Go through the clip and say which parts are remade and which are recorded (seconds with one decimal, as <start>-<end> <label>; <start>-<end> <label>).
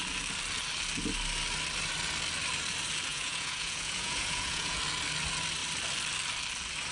0.0-3.1 recorded; 3.1-4.8 remade; 4.8-6.9 recorded